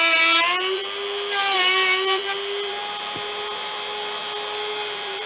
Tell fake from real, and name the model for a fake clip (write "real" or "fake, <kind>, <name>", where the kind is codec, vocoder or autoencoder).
real